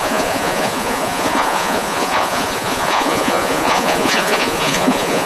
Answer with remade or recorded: remade